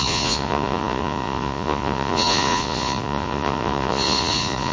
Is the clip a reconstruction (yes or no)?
yes